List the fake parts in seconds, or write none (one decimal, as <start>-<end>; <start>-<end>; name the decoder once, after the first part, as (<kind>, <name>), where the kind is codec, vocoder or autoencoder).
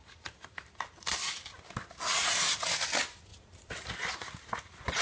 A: 0.0-1.3 (vocoder, BigVGAN v2); 2.1-2.6; 3.3-3.9